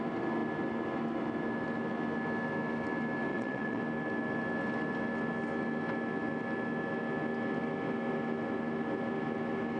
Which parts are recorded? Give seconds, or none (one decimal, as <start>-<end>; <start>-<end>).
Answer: 0.0-3.3; 3.8-9.8